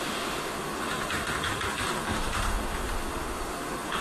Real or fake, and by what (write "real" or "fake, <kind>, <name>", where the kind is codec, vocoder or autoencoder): fake, autoencoder, DAC-VAE